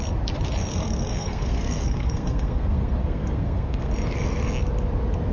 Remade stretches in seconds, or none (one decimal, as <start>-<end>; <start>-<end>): 0.7-3.9